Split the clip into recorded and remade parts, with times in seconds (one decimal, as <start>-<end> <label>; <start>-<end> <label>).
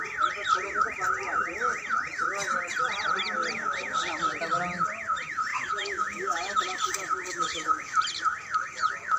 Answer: 0.0-5.5 recorded; 5.5-6.6 remade; 6.6-7.3 recorded; 7.3-7.9 remade; 7.9-9.2 recorded